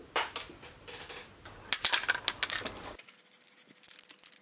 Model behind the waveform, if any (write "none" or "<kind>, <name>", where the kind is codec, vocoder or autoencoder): none